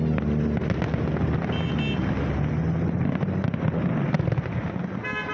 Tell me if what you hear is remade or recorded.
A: recorded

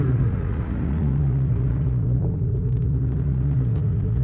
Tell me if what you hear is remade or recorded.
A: remade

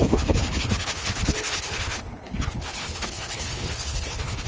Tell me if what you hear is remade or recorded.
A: remade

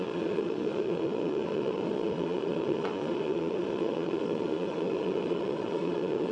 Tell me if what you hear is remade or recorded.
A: remade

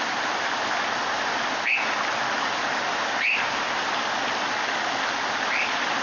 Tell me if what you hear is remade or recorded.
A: recorded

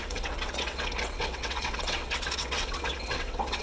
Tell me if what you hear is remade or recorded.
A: remade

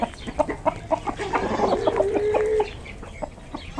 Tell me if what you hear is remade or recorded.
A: recorded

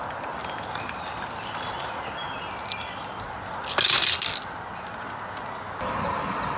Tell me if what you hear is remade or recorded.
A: recorded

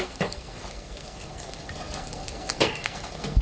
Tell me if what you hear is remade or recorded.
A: remade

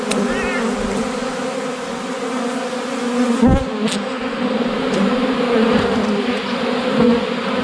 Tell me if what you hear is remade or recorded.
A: recorded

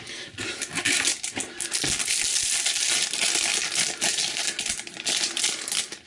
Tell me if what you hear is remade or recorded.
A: recorded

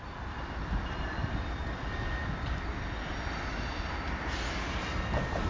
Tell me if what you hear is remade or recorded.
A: recorded